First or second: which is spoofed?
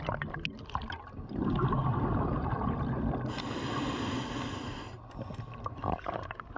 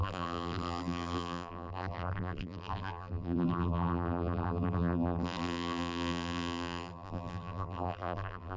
second